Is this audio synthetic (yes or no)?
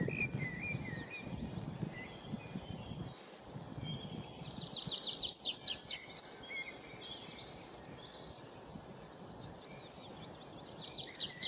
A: no